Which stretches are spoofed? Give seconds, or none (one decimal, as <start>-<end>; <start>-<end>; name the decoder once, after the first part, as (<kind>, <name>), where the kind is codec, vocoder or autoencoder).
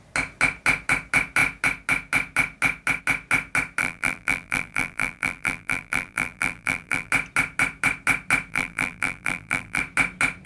3.8-7.1 (vocoder, BigVGAN v2); 8.5-9.8